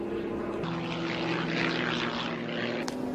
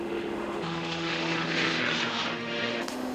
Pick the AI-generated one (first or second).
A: second